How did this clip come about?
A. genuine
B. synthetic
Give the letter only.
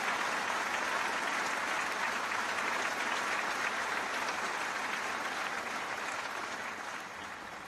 A